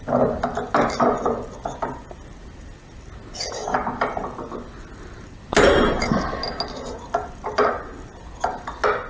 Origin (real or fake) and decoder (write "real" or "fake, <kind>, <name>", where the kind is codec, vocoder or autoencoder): real